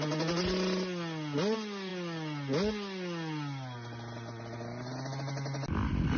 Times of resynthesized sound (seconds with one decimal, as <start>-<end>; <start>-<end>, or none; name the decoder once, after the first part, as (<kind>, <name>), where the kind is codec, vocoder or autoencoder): none

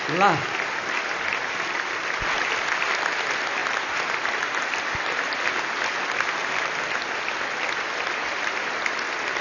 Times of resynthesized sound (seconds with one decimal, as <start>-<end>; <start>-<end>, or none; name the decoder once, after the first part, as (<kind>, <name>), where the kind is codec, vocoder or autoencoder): none

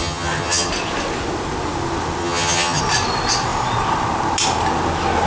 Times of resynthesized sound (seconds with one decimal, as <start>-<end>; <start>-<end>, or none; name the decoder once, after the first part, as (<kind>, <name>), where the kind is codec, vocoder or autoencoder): 0.0-0.7 (vocoder, HiFi-GAN); 2.2-2.8

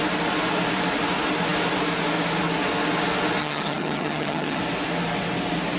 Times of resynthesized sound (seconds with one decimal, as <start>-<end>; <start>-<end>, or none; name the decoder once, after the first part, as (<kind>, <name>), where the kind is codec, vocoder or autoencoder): 3.4-4.6 (vocoder, HiFi-GAN)

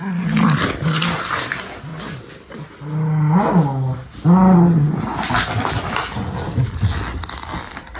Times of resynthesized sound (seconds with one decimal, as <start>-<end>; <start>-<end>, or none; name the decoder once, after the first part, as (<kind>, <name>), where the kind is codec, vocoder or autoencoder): none

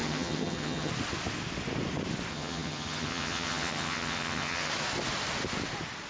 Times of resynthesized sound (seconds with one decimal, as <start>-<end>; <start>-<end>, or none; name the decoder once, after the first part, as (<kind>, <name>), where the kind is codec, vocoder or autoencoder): 0.0-0.9 (vocoder, HiFi-GAN); 2.3-4.7